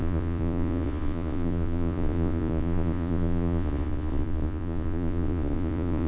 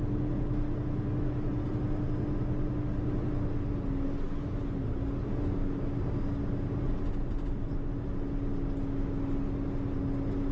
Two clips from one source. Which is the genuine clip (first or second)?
second